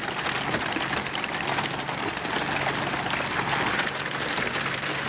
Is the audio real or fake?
real